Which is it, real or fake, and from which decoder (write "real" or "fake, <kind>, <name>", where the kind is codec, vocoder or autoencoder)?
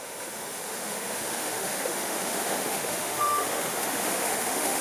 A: fake, autoencoder, DAC-VAE